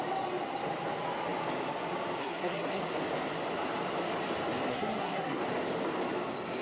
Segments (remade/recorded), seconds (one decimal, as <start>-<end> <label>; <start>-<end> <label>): 0.0-2.2 recorded; 2.2-2.8 remade; 2.8-4.7 recorded; 4.7-5.4 remade; 5.4-6.6 recorded